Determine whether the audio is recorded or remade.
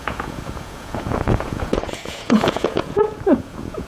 remade